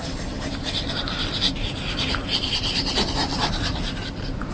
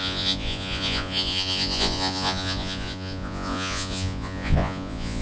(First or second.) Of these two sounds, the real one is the first